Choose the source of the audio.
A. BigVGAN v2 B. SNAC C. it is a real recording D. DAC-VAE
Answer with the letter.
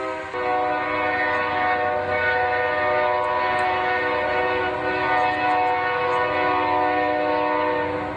C